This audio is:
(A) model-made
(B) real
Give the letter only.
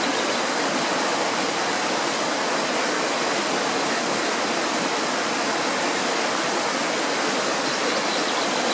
B